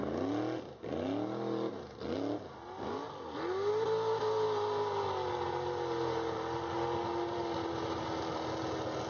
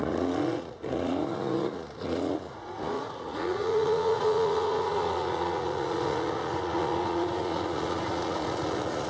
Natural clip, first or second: first